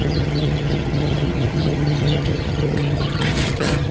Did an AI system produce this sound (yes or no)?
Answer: yes